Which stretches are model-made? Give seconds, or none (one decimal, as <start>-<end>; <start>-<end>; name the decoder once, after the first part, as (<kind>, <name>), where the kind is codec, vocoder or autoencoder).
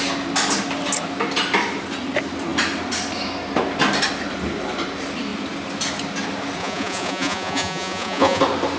6.6-8.4 (vocoder, Vocos)